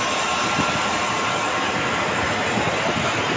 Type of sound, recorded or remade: recorded